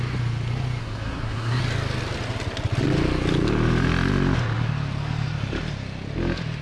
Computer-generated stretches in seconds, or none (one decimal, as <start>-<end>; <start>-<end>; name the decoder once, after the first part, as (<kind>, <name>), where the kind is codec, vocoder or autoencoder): 0.8-1.6 (codec, SNAC)